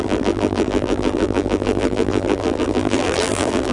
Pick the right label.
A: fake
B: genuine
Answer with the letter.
A